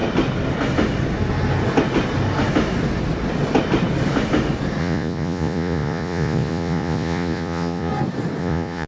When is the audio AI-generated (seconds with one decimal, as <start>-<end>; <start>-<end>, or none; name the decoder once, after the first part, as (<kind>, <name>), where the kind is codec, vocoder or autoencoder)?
4.8-7.9 (vocoder, Vocos); 8.4-8.9